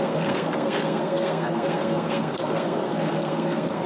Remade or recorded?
remade